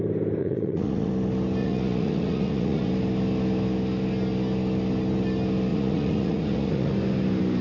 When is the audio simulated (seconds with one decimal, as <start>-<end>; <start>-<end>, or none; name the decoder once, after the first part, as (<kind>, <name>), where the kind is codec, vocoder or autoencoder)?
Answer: 0.4-1.1 (vocoder, Vocos); 1.6-2.9; 5.7-6.9